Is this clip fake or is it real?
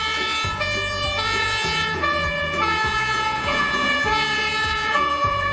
fake